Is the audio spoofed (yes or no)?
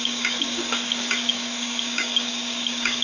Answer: yes